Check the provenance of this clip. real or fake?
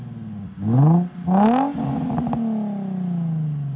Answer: real